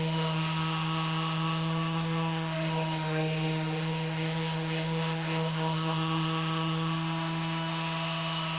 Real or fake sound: fake